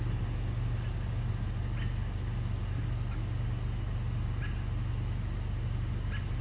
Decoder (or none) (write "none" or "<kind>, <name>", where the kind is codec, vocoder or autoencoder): none